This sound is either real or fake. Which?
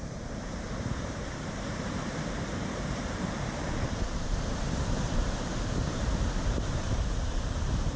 fake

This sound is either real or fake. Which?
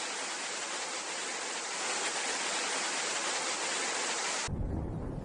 real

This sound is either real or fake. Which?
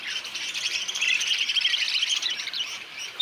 fake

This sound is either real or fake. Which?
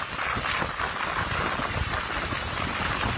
real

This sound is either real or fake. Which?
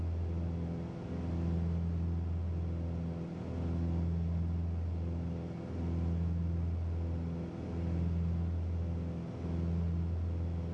real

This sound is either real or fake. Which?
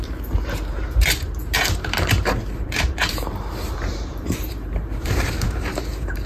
fake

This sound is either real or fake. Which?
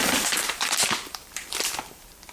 fake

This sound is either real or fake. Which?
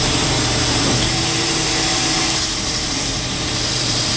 fake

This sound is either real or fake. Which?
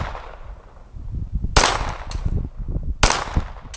real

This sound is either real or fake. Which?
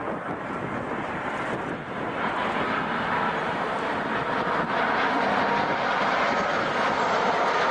real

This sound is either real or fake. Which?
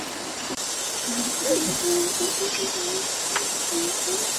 real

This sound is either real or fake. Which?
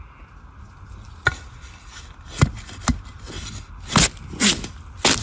real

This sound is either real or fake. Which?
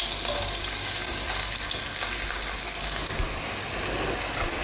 real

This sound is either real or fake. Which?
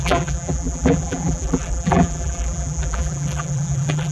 fake